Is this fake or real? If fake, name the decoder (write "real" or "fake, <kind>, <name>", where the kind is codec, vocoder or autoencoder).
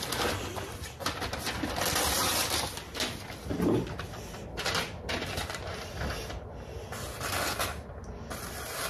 real